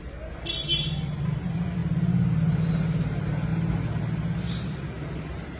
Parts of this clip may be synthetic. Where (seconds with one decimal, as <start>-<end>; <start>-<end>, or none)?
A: none